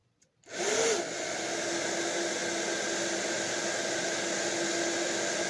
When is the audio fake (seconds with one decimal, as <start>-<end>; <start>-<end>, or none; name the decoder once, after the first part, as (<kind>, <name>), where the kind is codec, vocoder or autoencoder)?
none